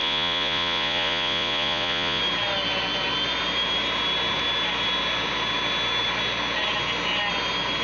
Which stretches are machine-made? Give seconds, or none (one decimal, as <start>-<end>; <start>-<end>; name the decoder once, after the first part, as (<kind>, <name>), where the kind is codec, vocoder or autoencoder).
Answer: 0.0-2.2 (vocoder, Vocos)